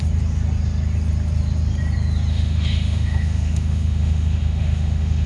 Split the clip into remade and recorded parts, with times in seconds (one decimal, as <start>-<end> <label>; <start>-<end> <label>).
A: 0.0-2.3 recorded; 2.3-5.3 remade